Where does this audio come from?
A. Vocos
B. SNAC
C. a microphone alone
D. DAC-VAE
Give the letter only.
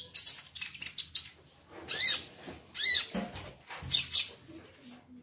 C